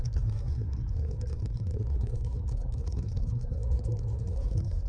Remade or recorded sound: remade